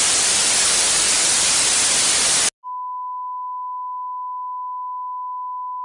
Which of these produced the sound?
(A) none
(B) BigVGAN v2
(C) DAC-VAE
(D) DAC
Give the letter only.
A